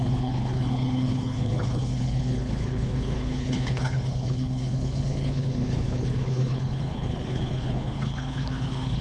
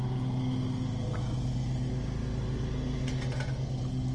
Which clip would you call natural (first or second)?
second